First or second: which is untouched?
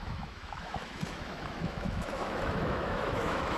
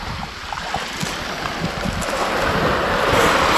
second